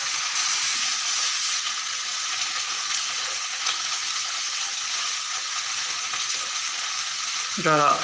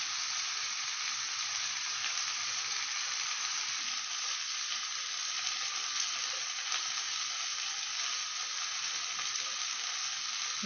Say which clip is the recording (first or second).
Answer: second